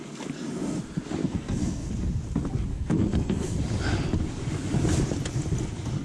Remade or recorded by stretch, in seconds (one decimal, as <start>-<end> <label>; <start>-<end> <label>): 0.0-1.2 recorded; 1.2-1.9 remade; 1.9-2.7 recorded; 2.7-3.6 remade; 3.6-6.0 recorded